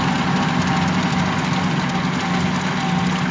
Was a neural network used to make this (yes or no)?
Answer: no